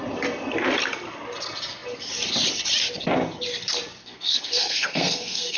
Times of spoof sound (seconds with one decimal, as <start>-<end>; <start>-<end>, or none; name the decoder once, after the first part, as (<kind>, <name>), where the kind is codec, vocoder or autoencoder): 4.0-5.6 (codec, SNAC)